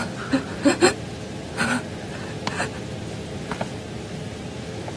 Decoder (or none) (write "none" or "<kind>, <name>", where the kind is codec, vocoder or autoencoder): none